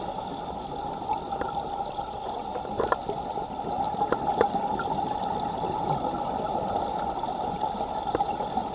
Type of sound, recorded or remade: recorded